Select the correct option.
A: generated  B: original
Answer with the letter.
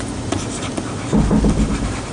B